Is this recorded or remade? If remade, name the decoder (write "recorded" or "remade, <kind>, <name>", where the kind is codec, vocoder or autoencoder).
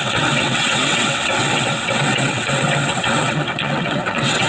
remade, vocoder, WaveNeXt